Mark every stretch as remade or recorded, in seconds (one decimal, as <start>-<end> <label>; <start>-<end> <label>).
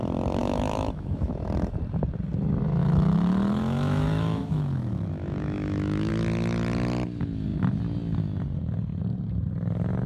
0.0-0.4 recorded; 0.4-1.3 remade; 1.3-2.8 recorded; 2.8-6.1 remade; 6.1-10.1 recorded